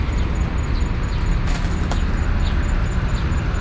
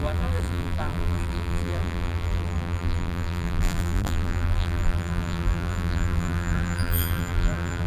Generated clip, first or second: second